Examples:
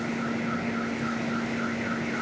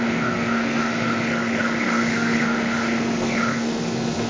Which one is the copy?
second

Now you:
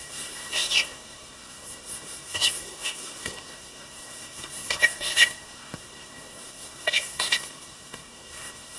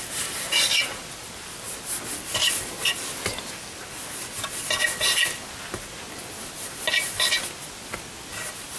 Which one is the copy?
first